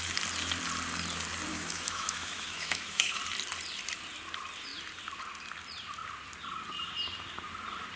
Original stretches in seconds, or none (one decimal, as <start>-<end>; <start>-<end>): 0.0-1.5; 3.2-8.0